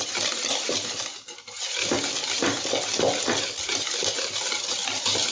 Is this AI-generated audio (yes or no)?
no